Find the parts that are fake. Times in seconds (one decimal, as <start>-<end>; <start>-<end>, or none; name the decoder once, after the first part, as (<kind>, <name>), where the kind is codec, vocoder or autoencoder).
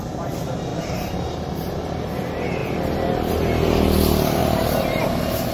0.7-1.8 (vocoder, BigVGAN v2); 4.4-5.1